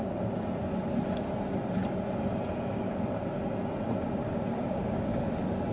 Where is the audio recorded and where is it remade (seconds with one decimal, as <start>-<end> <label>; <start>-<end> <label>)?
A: 0.0-4.2 recorded; 4.2-5.3 remade; 5.3-5.7 recorded